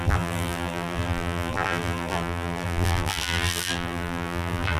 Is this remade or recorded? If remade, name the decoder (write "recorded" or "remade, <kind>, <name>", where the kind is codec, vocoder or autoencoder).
remade, vocoder, BigVGAN v2